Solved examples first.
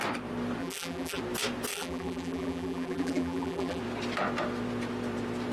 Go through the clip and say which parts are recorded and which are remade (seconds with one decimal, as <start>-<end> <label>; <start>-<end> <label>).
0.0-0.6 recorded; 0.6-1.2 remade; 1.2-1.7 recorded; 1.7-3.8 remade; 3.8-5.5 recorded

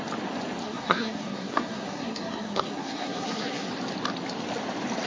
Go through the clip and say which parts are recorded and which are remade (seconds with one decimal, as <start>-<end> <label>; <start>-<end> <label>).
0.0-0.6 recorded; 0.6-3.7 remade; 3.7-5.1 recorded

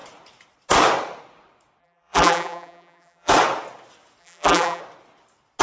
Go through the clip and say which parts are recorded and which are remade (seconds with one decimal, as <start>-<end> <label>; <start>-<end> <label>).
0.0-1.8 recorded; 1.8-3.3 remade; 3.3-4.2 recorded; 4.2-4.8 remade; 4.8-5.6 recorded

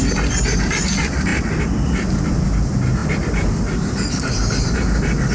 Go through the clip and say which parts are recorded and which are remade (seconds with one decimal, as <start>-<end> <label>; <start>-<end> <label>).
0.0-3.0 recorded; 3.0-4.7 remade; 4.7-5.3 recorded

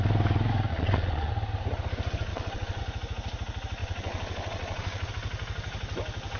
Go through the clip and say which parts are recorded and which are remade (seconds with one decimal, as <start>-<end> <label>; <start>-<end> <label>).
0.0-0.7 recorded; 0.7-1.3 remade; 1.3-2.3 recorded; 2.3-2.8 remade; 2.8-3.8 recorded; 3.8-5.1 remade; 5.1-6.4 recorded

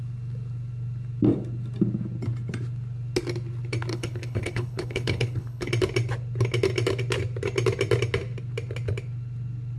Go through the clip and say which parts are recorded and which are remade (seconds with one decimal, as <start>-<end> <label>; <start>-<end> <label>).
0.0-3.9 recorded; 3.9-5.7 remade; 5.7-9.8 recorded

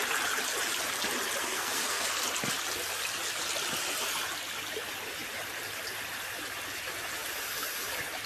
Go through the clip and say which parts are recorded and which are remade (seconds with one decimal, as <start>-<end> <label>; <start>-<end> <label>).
0.0-1.4 recorded; 1.4-2.2 remade; 2.2-8.3 recorded